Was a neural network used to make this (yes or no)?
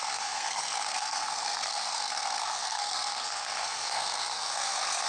yes